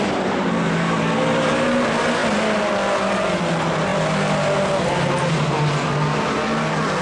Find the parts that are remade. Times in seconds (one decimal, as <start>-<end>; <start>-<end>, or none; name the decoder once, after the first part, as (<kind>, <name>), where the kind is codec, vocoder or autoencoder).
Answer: none